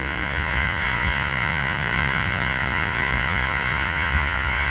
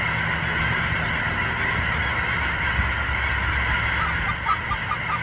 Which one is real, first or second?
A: second